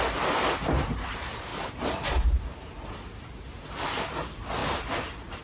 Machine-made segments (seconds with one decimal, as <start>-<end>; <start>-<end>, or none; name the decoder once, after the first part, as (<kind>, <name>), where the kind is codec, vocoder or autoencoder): 1.5-2.4 (vocoder, BigVGAN v2)